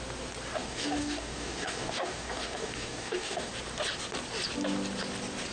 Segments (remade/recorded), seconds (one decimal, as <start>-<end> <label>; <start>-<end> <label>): 0.0-0.6 recorded; 0.6-3.5 remade; 3.5-5.5 recorded